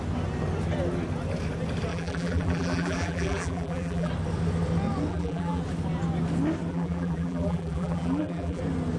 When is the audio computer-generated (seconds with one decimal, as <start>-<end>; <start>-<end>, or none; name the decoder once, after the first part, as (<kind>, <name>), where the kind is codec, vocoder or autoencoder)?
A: 1.9-4.1 (vocoder, BigVGAN v2); 5.1-5.6; 6.7-8.6